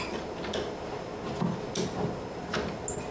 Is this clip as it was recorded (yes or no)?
yes